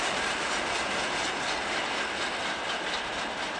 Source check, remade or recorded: recorded